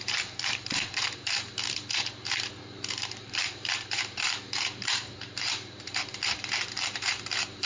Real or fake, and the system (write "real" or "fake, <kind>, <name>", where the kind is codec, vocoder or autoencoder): fake, vocoder, BigVGAN v2